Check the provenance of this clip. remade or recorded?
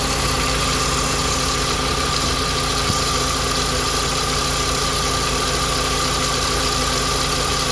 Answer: recorded